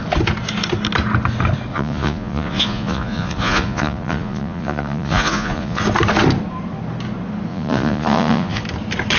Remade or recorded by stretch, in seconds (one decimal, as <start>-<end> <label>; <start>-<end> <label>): 0.0-1.7 recorded; 1.7-5.8 remade; 5.8-7.5 recorded; 7.5-8.6 remade; 8.6-9.2 recorded